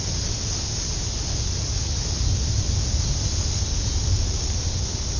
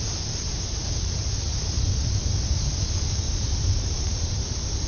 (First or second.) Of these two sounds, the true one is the first